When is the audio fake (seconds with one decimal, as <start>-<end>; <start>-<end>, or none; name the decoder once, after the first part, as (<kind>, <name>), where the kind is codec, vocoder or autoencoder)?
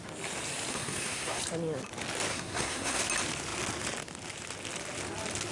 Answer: 0.7-1.4 (codec, SNAC); 2.3-3.0